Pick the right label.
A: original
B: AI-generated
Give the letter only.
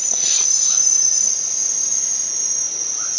A